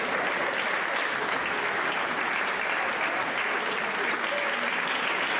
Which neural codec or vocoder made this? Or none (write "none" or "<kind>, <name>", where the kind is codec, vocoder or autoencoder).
none